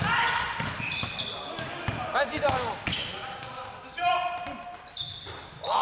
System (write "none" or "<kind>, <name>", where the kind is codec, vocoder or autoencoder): none